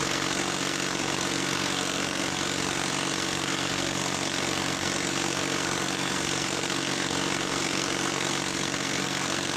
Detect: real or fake fake